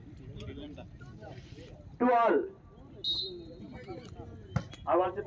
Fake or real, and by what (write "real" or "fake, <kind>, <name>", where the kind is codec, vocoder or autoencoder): real